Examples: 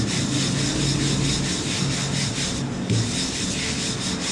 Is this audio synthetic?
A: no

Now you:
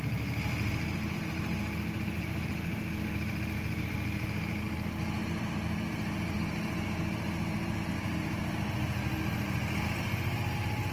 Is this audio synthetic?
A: yes